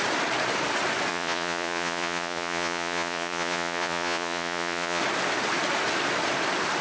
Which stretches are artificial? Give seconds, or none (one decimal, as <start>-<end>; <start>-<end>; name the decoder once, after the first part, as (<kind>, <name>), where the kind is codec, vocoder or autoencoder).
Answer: 1.1-5.0 (vocoder, Vocos)